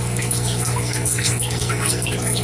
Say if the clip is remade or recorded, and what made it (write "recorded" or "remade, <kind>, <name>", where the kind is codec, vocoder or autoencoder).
remade, codec, SNAC